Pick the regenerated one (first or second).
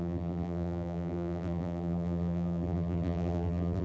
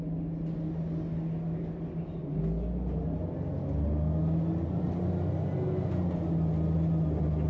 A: first